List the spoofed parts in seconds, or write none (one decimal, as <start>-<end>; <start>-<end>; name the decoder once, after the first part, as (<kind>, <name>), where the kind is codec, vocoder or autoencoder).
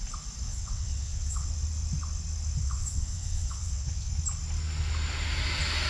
0.5-1.5 (vocoder, WaveNeXt); 2.6-4.1